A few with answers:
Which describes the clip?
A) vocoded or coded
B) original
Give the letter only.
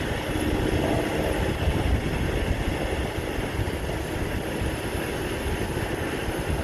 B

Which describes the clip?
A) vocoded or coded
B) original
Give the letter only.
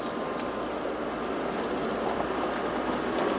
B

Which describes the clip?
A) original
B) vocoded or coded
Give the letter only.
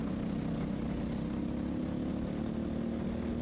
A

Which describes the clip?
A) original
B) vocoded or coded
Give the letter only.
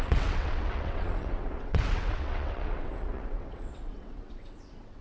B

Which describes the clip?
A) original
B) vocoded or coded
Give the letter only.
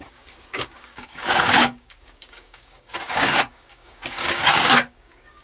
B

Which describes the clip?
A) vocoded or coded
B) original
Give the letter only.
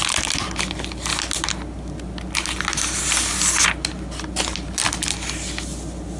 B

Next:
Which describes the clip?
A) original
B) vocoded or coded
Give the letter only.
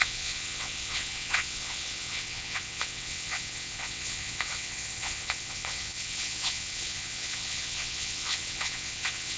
B